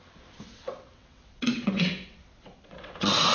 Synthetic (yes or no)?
yes